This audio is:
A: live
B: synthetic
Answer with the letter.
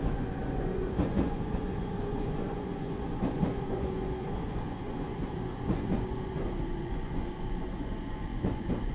B